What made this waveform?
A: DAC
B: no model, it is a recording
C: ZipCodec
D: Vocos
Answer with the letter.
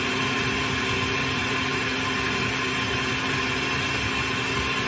B